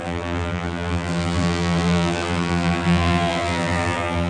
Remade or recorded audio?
remade